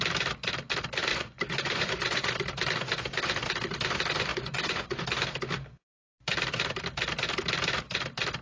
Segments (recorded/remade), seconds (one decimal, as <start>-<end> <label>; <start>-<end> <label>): 0.0-1.1 recorded; 1.1-2.3 remade; 2.3-4.3 recorded; 4.3-5.0 remade; 5.0-8.4 recorded